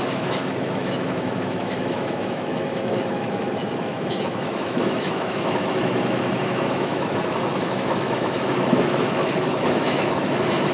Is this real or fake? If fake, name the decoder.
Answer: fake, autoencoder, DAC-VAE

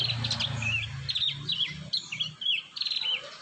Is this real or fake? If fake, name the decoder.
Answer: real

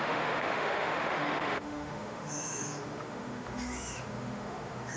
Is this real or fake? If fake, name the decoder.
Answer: fake, autoencoder, DAC-VAE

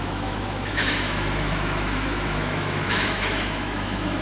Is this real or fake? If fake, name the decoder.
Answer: fake, autoencoder, DAC-VAE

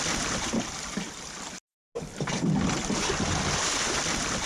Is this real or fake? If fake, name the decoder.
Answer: real